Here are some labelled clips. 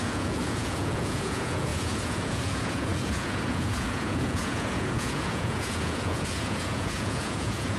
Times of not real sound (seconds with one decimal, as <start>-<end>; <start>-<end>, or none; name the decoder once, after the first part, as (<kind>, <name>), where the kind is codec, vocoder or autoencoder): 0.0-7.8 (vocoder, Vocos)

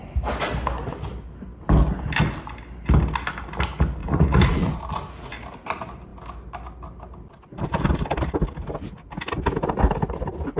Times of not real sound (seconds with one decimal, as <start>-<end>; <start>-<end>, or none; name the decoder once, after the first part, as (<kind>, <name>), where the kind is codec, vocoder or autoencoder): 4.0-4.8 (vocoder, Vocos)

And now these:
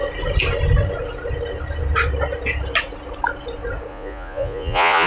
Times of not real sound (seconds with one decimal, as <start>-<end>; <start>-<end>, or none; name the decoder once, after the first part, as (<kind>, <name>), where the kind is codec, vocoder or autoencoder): 3.9-5.1 (vocoder, Vocos)

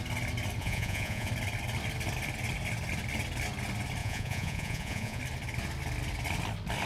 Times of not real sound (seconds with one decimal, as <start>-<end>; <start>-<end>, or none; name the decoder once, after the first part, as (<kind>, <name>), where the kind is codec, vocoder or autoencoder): 0.6-1.3 (vocoder, Vocos); 4.0-5.2